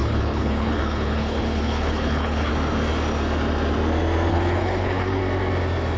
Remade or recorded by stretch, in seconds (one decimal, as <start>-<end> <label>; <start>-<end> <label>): 0.0-2.5 remade; 2.5-4.3 recorded; 4.3-5.2 remade; 5.2-6.0 recorded